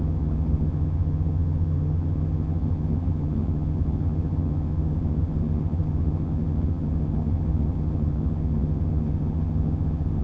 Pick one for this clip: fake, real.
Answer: fake